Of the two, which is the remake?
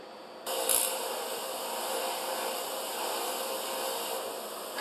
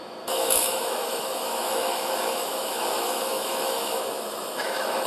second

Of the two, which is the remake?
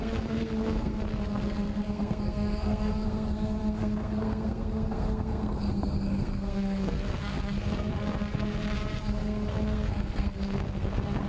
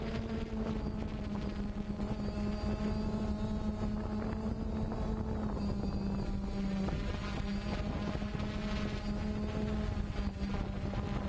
first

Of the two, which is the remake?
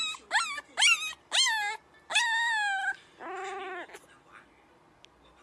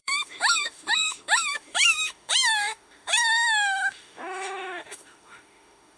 second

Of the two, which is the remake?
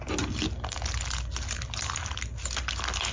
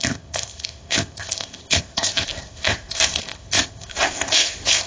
second